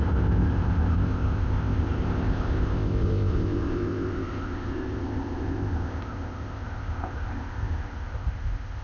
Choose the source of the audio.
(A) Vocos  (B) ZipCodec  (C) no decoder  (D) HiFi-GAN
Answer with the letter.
B